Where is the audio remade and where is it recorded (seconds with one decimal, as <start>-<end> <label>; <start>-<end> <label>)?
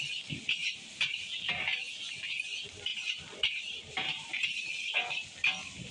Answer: 0.0-0.6 recorded; 0.6-1.5 remade; 1.5-2.9 recorded; 2.9-4.3 remade; 4.3-5.9 recorded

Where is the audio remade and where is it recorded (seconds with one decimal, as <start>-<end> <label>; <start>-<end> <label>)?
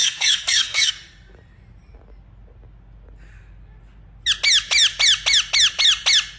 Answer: 0.0-0.9 remade; 0.9-6.4 recorded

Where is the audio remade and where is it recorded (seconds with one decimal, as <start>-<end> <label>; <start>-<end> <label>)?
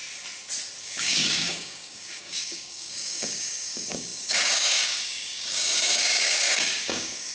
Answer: 0.0-0.8 recorded; 0.8-7.3 remade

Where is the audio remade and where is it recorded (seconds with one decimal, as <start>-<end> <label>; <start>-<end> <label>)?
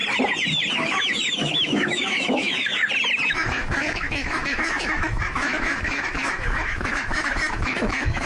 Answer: 0.0-0.7 recorded; 0.7-2.7 remade; 2.7-3.3 recorded; 3.3-8.3 remade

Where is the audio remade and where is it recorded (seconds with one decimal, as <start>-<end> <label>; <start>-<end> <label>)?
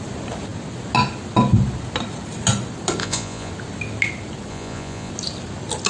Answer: 0.0-3.0 recorded; 3.0-3.5 remade; 3.5-4.5 recorded; 4.5-5.1 remade; 5.1-5.9 recorded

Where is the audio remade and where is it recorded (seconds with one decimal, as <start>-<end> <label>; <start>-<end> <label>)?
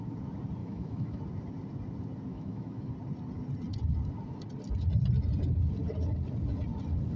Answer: 0.0-0.6 recorded; 0.6-1.2 remade; 1.2-2.3 recorded; 2.3-2.9 remade; 2.9-7.2 recorded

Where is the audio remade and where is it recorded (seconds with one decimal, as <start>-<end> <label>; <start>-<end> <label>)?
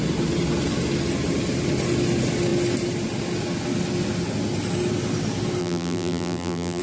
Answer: 0.0-5.6 recorded; 5.6-6.8 remade